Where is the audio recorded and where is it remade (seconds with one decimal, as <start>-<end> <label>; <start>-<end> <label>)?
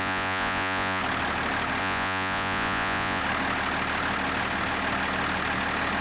0.0-1.0 remade; 1.0-1.8 recorded; 1.8-3.2 remade; 3.2-6.0 recorded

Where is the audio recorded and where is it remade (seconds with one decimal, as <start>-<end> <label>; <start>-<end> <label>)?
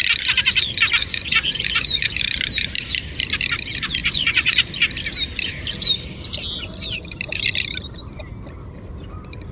0.0-1.0 recorded; 1.0-2.1 remade; 2.1-4.0 recorded; 4.0-4.7 remade; 4.7-9.5 recorded